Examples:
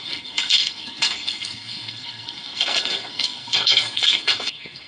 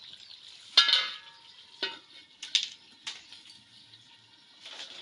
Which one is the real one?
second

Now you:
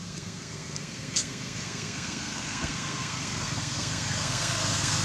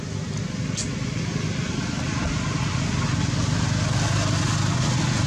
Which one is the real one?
second